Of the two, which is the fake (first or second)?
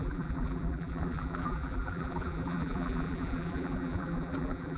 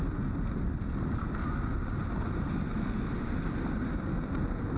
first